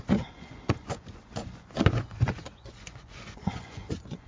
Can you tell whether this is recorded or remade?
remade